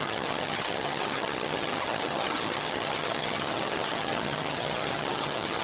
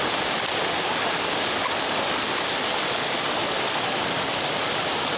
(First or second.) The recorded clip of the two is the second